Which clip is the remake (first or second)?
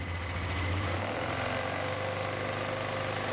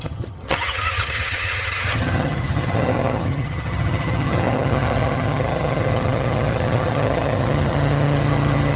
second